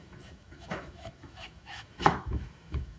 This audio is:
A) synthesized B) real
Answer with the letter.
A